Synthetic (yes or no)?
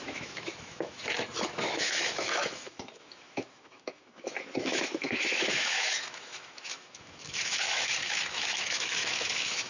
yes